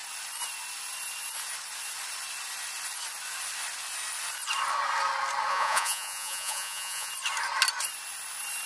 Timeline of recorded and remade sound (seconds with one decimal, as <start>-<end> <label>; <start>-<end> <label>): 0.0-5.5 recorded; 5.5-7.1 remade; 7.1-8.7 recorded